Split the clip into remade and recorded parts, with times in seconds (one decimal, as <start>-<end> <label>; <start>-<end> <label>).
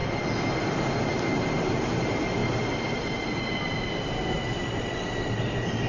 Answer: 0.0-1.7 recorded; 1.7-2.4 remade; 2.4-5.9 recorded